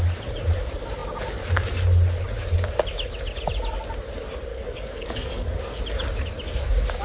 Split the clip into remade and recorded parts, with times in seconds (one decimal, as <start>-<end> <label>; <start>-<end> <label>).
0.0-4.5 recorded; 4.5-5.8 remade; 5.8-7.0 recorded